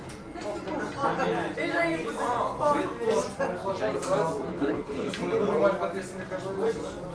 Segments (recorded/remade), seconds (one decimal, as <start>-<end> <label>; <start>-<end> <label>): 0.0-4.5 recorded; 4.5-5.1 remade; 5.1-7.1 recorded